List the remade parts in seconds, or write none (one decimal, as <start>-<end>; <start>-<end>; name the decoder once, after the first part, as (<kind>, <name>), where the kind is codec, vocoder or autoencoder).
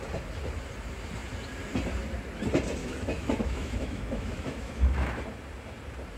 2.8-5.2 (autoencoder, DAC-VAE)